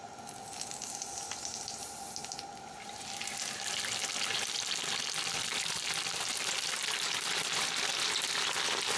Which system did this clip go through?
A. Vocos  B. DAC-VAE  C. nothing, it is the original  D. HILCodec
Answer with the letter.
C